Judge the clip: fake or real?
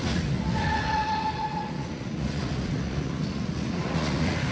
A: fake